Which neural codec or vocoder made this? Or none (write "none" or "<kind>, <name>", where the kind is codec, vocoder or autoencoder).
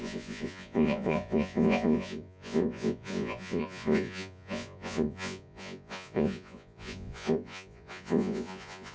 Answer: vocoder, Vocos